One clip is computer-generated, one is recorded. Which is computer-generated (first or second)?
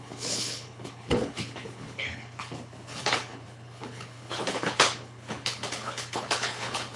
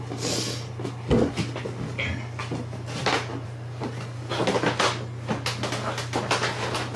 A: first